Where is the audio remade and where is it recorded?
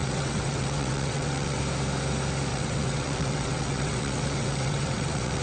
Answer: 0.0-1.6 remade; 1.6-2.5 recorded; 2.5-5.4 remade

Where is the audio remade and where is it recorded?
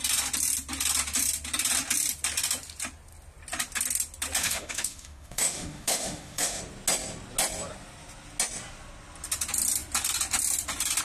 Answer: 0.0-4.4 recorded; 4.4-6.6 remade; 6.6-11.0 recorded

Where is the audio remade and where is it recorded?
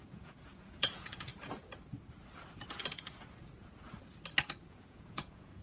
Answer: 0.0-1.3 remade; 1.3-4.7 recorded; 4.7-5.6 remade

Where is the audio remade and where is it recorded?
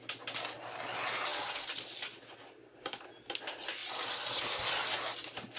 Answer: 0.0-5.6 recorded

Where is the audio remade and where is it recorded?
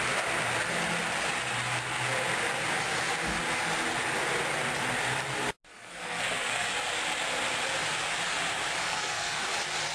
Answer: 0.0-5.7 recorded; 5.7-6.7 remade; 6.7-8.8 recorded; 8.8-9.4 remade; 9.4-9.9 recorded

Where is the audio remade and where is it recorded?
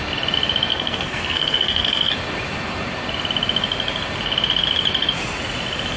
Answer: 0.0-0.7 recorded; 0.7-2.1 remade; 2.1-6.0 recorded